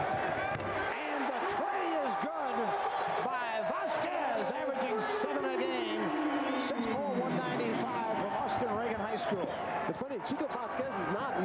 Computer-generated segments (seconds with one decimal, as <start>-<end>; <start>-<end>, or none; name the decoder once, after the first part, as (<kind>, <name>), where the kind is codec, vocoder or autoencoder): 7.7-8.4 (autoencoder, DAC-VAE)